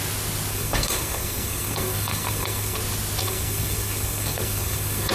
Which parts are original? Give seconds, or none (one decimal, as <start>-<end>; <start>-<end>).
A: 0.0-0.5; 2.8-3.2